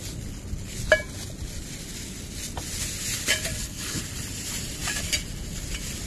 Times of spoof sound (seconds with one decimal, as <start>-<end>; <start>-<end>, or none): 3.5-4.0

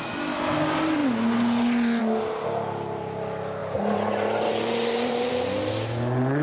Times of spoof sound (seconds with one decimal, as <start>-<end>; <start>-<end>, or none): 3.6-5.3

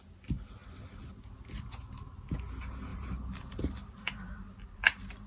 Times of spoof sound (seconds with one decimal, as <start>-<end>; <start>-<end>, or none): 2.9-5.3

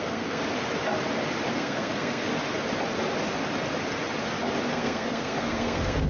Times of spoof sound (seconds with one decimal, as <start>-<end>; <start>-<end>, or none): 0.0-0.4; 1.5-2.3; 4.7-6.1

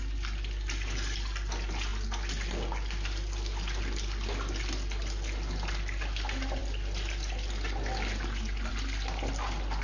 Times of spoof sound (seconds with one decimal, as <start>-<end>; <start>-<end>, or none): none

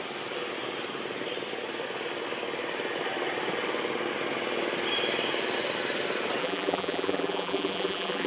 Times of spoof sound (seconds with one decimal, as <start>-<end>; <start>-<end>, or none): 6.4-8.3

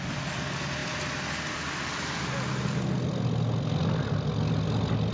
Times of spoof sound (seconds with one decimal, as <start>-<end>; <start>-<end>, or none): none

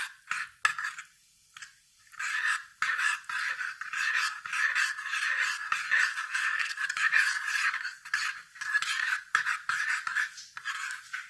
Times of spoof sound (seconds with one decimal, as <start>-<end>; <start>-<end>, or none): 6.1-6.8